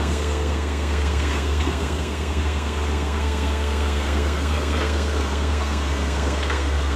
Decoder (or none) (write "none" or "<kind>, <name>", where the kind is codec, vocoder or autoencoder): codec, SNAC